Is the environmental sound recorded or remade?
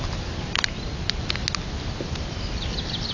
recorded